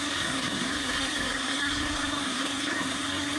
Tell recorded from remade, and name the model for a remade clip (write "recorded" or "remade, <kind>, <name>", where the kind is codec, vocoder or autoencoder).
remade, codec, SNAC